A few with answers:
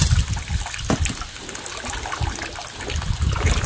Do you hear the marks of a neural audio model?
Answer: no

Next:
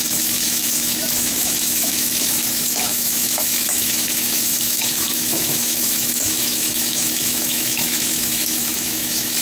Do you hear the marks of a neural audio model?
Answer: yes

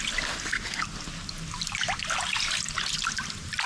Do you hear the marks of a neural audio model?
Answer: no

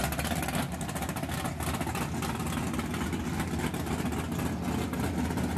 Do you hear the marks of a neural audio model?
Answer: no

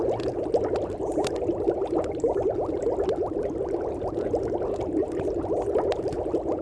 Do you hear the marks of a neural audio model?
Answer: no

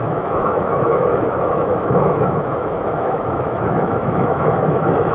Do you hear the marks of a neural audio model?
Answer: yes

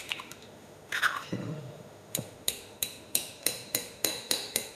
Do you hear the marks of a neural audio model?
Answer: yes